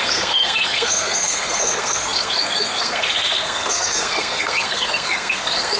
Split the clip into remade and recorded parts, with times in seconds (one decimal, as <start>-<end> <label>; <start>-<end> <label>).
0.0-5.8 remade